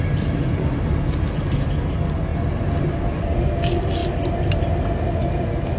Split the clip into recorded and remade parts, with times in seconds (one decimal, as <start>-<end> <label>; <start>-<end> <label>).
0.0-5.8 recorded

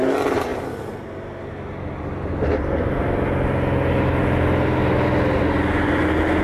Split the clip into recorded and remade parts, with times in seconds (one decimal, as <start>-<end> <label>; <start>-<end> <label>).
0.0-6.4 recorded

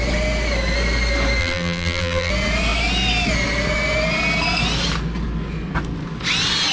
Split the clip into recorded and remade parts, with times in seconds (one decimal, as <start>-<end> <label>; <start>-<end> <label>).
0.0-1.4 recorded; 1.4-2.3 remade; 2.3-6.7 recorded

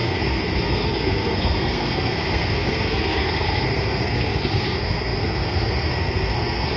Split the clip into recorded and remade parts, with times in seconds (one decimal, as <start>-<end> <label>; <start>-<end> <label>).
0.0-6.8 remade

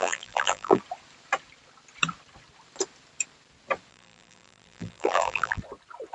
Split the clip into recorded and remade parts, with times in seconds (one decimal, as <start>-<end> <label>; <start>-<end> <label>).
0.0-0.8 remade; 0.8-3.9 recorded; 3.9-5.6 remade; 5.6-6.1 recorded

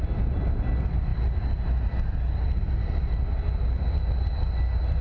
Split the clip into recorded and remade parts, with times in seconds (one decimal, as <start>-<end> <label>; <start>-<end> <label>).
0.0-5.0 recorded